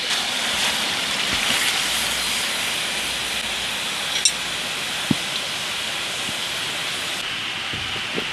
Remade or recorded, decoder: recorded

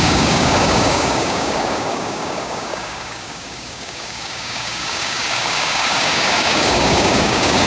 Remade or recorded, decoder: remade, codec, DAC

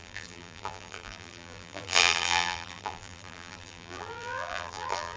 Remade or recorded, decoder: remade, vocoder, BigVGAN v2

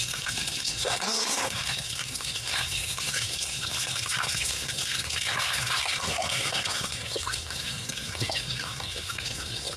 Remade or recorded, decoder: remade, codec, SNAC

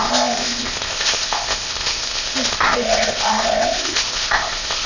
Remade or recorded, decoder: remade, codec, ZipCodec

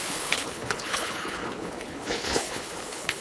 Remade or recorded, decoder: remade, codec, HILCodec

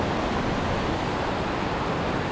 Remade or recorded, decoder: recorded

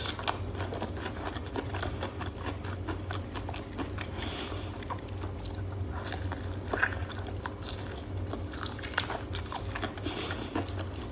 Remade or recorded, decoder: recorded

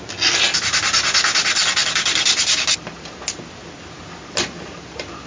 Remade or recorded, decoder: recorded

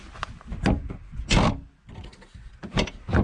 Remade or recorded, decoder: recorded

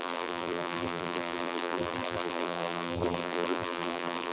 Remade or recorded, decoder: remade, vocoder, BigVGAN v2